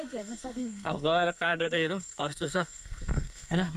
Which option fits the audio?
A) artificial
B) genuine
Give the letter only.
A